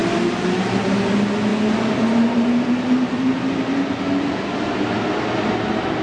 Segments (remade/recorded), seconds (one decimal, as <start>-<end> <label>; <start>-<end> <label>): 0.0-6.0 recorded